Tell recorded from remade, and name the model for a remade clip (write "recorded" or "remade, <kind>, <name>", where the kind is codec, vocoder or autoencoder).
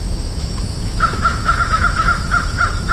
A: remade, autoencoder, DAC-VAE